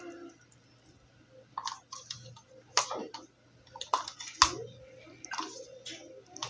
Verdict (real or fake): real